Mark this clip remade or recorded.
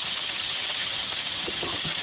remade